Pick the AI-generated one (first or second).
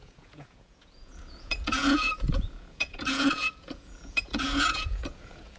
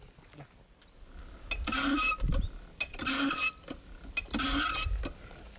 first